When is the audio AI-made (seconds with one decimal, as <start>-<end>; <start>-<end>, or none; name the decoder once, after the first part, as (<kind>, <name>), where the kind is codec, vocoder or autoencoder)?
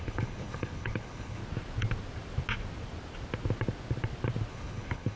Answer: 0.0-1.4 (codec, HILCodec); 4.5-5.2